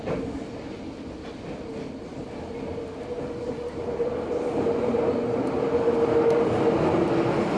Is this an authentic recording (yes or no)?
yes